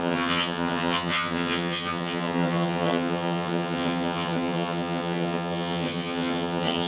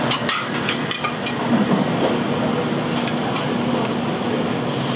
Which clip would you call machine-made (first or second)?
first